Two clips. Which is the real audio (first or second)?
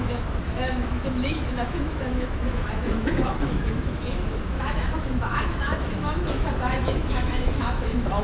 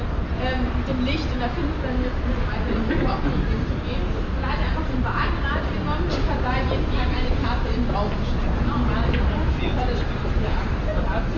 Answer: second